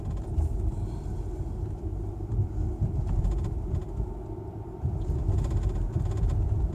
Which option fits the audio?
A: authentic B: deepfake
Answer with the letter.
A